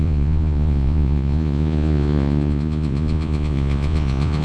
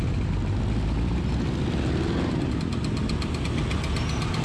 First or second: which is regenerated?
first